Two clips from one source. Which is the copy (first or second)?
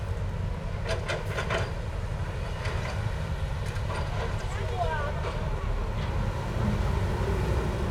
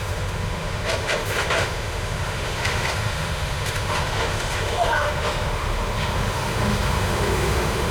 second